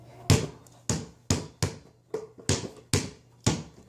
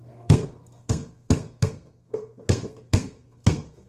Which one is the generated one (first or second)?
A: second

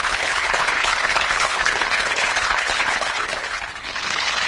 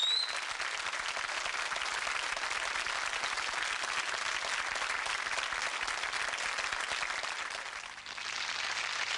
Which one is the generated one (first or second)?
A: first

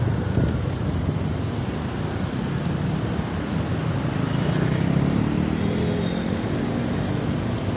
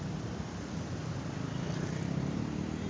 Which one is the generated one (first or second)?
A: second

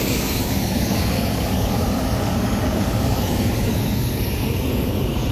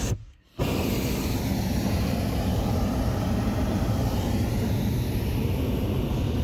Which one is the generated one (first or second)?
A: first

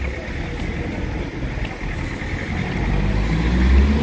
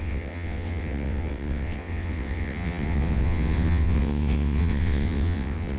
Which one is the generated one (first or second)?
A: second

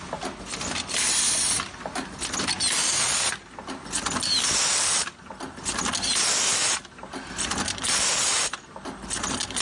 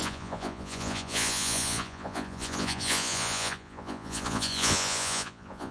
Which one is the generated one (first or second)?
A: second